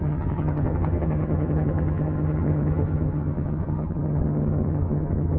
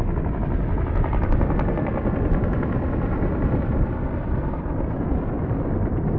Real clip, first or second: second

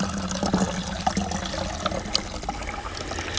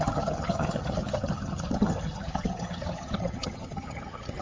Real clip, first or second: first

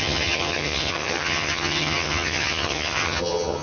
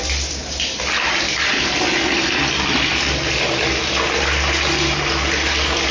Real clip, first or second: second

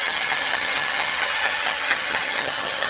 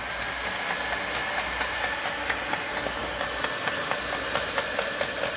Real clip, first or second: second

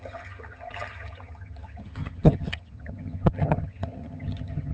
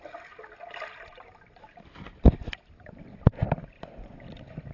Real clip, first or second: second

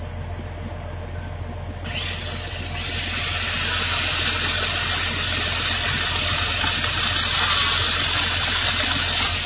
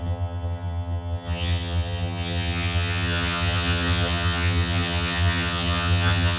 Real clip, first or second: first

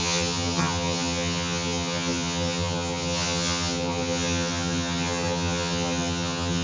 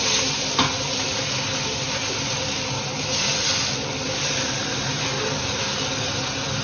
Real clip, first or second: second